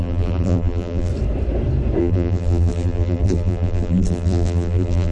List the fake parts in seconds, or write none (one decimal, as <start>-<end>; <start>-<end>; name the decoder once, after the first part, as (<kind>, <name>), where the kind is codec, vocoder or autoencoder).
0.0-1.1 (vocoder, BigVGAN v2); 2.0-5.1

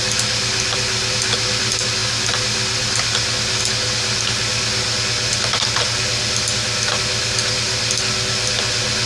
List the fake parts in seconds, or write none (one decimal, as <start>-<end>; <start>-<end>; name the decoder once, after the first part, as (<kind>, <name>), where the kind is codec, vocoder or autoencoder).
none

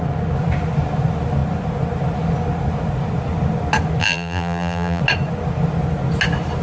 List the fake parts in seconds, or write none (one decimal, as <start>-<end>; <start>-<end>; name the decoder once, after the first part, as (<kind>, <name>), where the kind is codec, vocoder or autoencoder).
4.0-5.0 (vocoder, BigVGAN v2)